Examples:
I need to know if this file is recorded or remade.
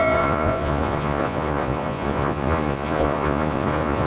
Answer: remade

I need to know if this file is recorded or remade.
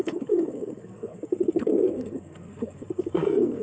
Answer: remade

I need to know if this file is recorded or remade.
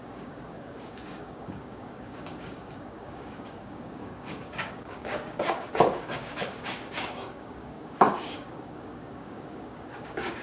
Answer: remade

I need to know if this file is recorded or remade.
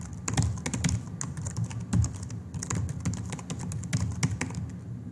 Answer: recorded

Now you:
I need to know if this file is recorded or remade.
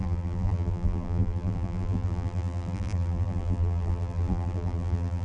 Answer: remade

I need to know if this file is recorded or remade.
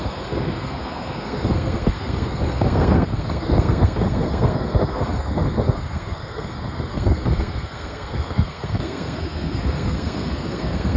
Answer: remade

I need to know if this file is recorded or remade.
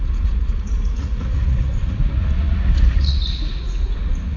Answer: remade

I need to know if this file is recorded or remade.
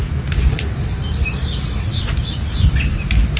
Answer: recorded